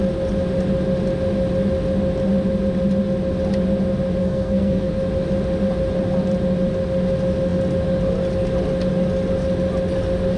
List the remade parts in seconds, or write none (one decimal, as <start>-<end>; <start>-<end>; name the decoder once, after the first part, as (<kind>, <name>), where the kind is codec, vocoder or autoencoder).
4.2-4.9 (codec, SNAC)